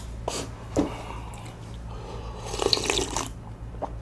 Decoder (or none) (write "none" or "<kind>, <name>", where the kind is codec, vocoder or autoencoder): none